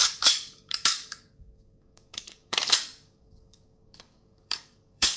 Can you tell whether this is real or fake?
fake